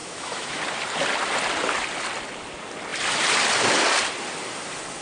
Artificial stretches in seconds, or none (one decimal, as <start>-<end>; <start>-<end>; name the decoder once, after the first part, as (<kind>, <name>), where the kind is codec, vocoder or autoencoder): 0.0-0.6 (autoencoder, DAC-VAE)